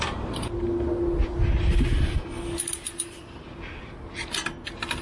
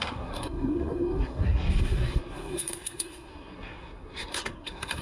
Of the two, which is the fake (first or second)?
second